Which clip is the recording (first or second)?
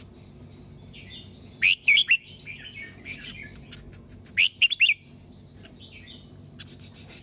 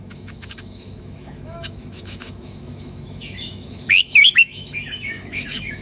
first